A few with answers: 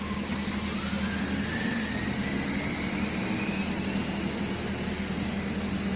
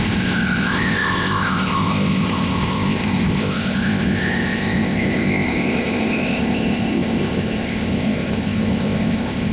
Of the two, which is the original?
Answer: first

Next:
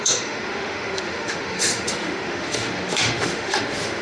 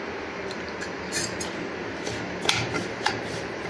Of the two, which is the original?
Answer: second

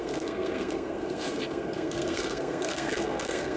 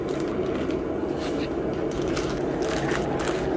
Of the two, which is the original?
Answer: second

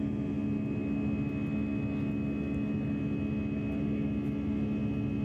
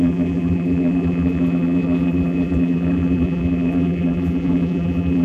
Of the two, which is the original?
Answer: first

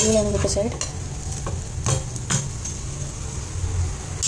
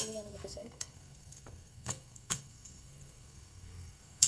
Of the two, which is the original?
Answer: first